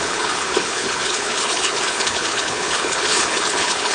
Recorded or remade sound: remade